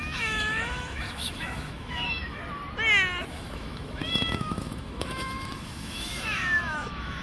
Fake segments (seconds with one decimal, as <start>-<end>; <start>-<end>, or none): 0.0-2.4; 3.3-7.2